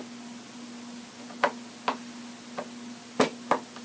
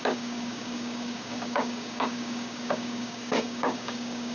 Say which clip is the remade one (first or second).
second